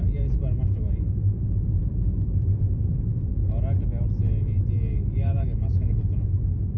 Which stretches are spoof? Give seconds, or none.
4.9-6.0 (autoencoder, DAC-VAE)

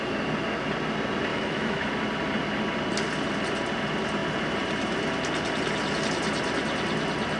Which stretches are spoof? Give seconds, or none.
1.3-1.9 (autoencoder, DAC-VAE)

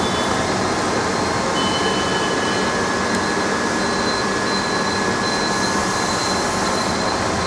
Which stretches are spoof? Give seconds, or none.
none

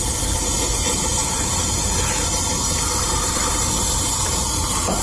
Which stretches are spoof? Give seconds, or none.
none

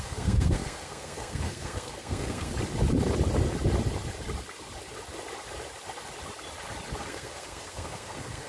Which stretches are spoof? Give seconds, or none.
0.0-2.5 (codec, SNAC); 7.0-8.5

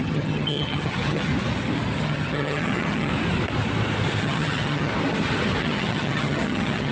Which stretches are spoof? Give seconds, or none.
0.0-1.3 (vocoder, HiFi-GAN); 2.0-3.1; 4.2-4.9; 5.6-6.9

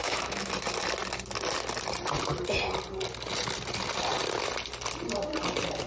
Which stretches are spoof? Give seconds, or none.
0.0-0.5 (autoencoder, DAC-VAE)

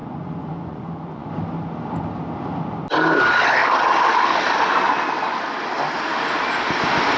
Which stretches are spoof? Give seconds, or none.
0.0-1.3 (vocoder, Vocos)